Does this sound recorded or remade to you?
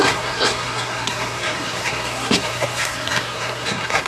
remade